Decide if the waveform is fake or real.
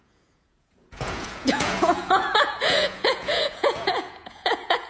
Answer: fake